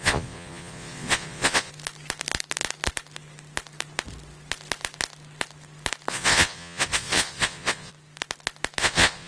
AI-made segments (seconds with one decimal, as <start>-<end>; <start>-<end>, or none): 0.0-1.7; 6.1-7.9; 8.8-9.3